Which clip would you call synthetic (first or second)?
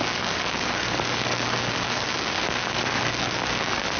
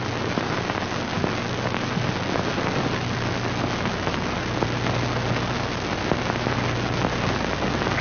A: first